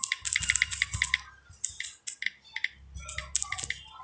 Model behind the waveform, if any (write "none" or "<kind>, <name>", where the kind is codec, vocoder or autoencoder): none